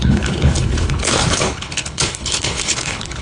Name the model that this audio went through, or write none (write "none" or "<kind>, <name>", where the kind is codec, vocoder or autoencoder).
codec, HILCodec